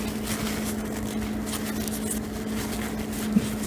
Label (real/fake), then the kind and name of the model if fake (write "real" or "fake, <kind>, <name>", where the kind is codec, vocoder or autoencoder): real